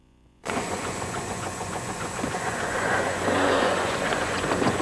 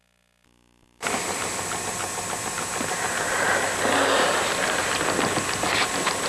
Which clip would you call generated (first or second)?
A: first